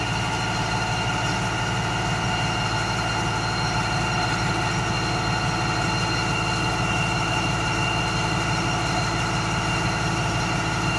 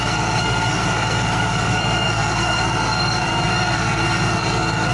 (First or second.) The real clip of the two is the first